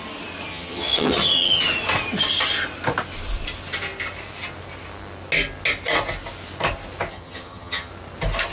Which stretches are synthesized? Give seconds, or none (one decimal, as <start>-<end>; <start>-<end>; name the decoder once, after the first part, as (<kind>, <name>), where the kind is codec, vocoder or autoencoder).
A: 0.5-1.6 (vocoder, HiFi-GAN); 7.1-7.9